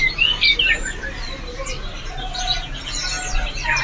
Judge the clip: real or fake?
real